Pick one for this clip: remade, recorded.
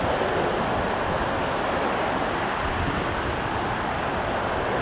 recorded